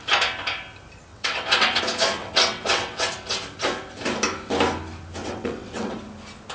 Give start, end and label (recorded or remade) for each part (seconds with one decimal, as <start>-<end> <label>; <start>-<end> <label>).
0.0-1.1 recorded; 1.1-1.8 remade; 1.8-2.2 recorded; 2.2-3.1 remade; 3.1-5.2 recorded; 5.2-6.0 remade; 6.0-6.5 recorded